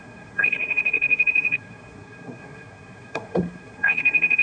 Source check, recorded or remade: remade